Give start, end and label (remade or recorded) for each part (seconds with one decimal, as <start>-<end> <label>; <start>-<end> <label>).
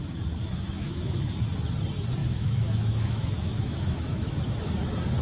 0.0-0.4 recorded; 0.4-1.3 remade; 1.3-2.2 recorded; 2.2-4.7 remade; 4.7-5.2 recorded